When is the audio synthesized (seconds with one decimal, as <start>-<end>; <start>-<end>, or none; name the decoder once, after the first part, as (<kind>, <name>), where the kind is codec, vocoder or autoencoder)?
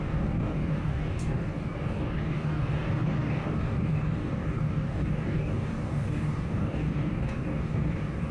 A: 0.0-8.3 (codec, DAC)